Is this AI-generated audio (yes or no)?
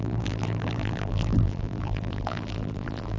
yes